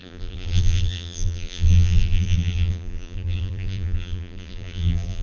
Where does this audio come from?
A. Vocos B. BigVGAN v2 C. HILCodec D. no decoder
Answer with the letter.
B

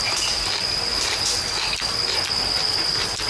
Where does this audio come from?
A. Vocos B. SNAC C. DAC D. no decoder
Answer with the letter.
D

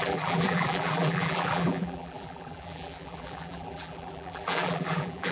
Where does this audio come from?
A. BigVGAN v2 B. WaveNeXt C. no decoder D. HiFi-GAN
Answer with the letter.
A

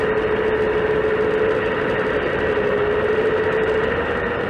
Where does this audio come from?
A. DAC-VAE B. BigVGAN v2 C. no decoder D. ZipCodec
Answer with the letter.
C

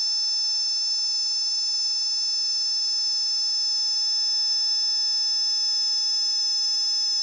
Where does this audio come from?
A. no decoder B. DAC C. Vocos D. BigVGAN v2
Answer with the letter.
A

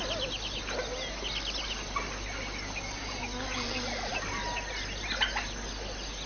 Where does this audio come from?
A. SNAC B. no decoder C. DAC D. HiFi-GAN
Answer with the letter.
B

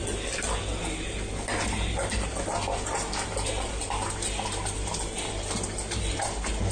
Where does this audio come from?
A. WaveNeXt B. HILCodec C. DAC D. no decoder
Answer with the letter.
D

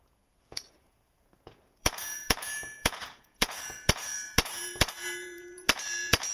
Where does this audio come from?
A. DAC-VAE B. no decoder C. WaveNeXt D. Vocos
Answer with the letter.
D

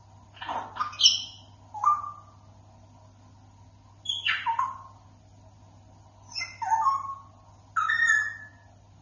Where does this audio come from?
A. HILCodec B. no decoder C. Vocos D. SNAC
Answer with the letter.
B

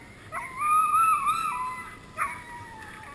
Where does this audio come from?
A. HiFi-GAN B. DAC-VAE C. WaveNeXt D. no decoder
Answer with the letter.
D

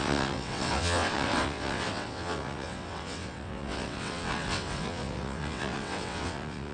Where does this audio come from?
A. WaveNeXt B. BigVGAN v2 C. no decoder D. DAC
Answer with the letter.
A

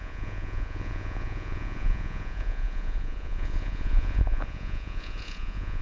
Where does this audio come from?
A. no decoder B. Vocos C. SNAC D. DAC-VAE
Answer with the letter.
B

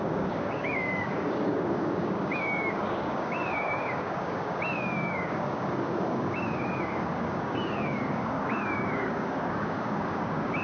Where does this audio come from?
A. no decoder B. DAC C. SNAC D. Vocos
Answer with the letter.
B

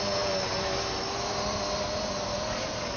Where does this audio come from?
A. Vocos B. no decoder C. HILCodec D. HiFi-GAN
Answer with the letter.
B